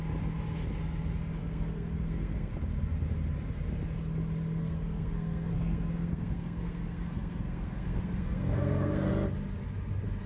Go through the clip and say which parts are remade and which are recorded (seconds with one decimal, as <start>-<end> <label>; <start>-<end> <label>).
0.0-1.4 recorded; 1.4-2.5 remade; 2.5-4.6 recorded; 4.6-9.1 remade; 9.1-10.3 recorded